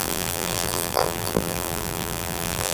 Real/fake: fake